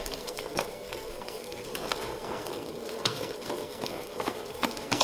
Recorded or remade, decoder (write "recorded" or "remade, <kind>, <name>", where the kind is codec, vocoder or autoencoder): remade, codec, SNAC